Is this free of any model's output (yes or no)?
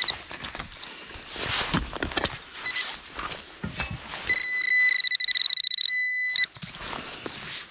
yes